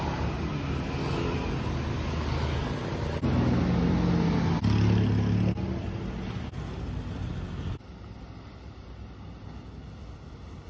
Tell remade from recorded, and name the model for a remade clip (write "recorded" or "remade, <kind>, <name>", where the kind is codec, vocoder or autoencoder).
recorded